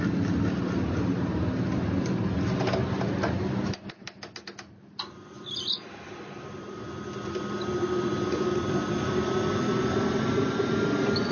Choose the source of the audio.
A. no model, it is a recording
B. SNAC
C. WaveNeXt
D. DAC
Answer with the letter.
A